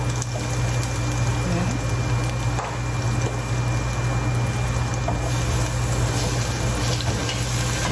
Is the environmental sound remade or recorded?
recorded